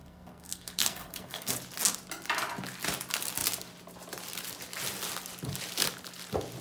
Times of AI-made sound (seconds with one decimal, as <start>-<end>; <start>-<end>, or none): 0.0-1.5